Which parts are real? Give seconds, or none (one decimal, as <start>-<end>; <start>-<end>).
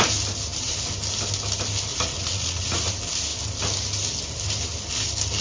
0.0-1.9; 2.9-5.4